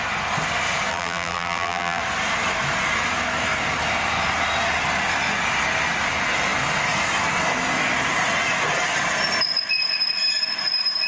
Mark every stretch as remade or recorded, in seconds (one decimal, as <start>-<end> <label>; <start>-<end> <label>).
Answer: 0.0-0.9 recorded; 0.9-2.0 remade; 2.0-11.1 recorded